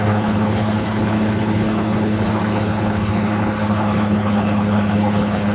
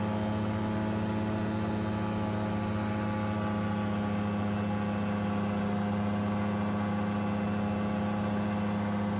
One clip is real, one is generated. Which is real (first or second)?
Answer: second